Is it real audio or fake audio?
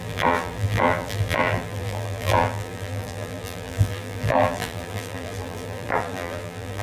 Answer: fake